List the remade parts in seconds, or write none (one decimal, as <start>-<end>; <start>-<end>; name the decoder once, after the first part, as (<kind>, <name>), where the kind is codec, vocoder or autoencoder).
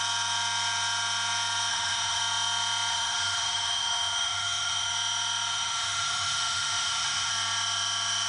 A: 1.7-2.2 (autoencoder, DAC-VAE); 2.9-4.9; 5.5-7.3